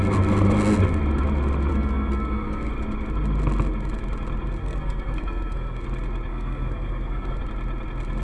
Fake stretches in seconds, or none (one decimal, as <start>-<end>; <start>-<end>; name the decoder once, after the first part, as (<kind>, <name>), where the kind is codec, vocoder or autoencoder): 1.7-2.7 (codec, SNAC); 4.6-5.8; 6.3-7.4